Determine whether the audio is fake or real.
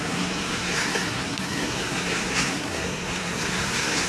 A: fake